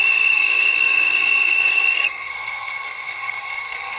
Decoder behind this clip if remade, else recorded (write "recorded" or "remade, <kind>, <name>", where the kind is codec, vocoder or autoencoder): remade, codec, SNAC